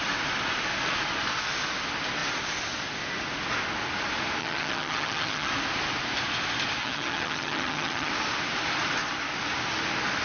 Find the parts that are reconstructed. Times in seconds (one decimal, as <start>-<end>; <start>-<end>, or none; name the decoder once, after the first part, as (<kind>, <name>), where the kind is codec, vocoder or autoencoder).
4.4-5.5 (vocoder, HiFi-GAN); 6.8-8.1